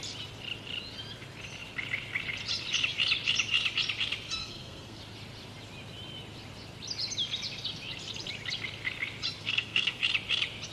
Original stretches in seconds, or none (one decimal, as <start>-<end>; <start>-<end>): 0.0-4.4; 5.0-9.4; 10.0-10.7